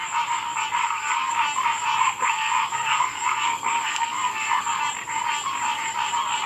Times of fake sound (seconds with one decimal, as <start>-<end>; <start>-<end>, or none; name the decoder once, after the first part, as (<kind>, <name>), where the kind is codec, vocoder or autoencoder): 0.8-1.3 (codec, SNAC); 2.0-4.8